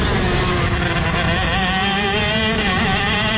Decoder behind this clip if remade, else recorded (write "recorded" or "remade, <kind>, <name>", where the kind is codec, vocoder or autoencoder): recorded